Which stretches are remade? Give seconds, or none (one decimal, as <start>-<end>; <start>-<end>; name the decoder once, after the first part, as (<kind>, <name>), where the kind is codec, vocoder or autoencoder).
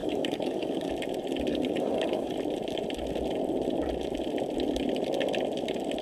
0.0-0.9 (codec, DAC); 1.5-2.3